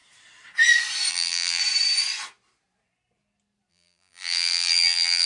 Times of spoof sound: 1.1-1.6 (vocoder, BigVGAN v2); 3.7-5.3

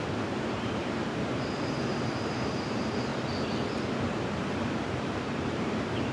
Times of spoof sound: 0.0-3.1 (vocoder, BigVGAN v2); 4.1-6.1